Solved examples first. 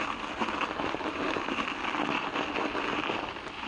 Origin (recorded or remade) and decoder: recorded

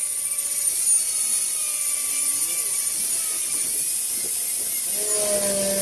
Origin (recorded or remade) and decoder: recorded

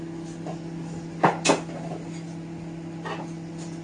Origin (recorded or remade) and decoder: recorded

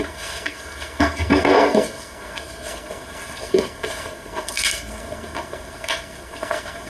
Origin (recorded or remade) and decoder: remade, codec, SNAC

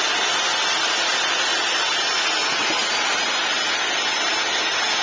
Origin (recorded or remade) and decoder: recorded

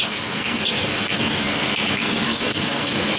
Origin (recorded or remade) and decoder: remade, codec, SNAC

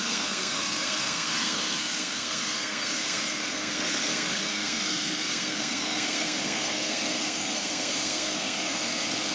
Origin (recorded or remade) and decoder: remade, codec, SNAC